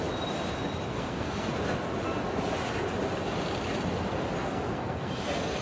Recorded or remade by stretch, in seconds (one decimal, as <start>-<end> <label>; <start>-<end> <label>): 0.0-0.9 recorded; 0.9-1.5 remade; 1.5-4.4 recorded; 4.4-5.1 remade; 5.1-5.6 recorded